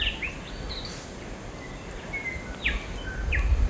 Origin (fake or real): real